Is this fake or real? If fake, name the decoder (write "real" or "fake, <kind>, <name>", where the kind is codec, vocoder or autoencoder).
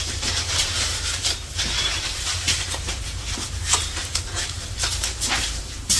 fake, vocoder, BigVGAN v2